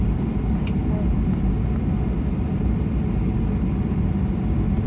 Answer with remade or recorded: recorded